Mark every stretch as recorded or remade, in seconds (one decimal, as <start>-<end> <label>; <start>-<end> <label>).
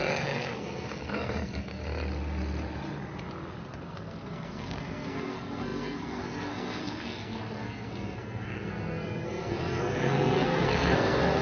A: 0.0-1.8 remade; 1.8-3.8 recorded; 3.8-11.4 remade